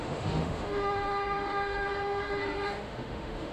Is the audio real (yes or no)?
no